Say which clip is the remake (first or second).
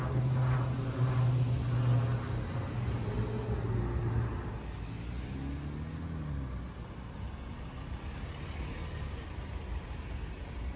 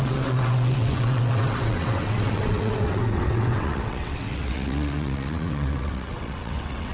second